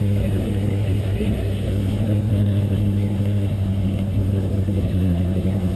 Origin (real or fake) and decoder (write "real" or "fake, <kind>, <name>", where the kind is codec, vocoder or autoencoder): fake, codec, SNAC